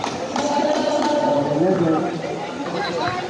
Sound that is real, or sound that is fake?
real